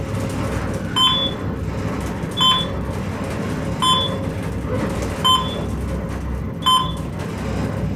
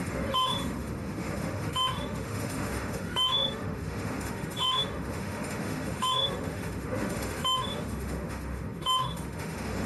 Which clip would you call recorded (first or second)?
first